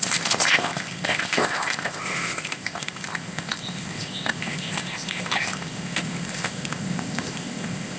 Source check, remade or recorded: remade